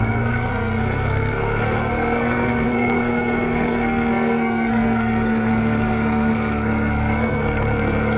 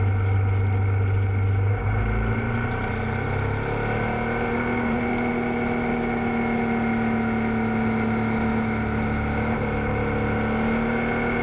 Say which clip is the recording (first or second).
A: second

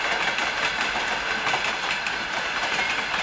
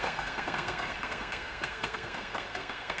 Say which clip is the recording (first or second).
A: first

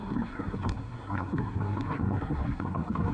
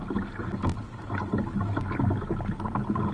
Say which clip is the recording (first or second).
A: second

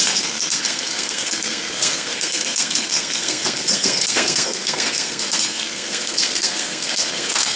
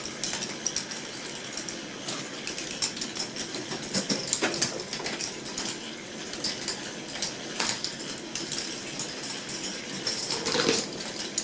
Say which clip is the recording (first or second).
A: second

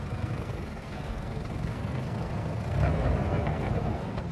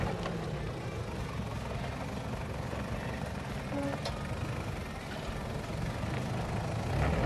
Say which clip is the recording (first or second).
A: second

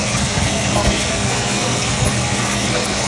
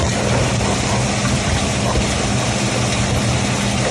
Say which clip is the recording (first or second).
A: second